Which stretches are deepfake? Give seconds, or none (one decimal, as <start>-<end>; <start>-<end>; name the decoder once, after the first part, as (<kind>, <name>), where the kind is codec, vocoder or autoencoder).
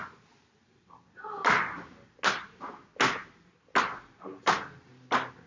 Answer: none